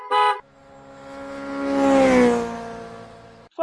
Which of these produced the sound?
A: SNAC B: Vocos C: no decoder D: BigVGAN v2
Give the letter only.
C